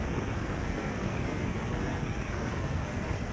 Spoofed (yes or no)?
yes